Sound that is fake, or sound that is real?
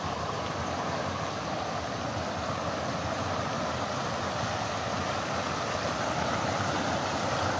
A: real